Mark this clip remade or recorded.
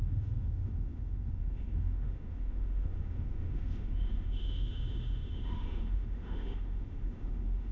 remade